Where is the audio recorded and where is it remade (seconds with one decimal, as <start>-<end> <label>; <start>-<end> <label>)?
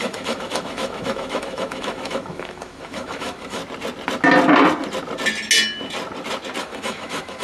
0.0-3.6 remade; 3.6-6.6 recorded; 6.6-7.4 remade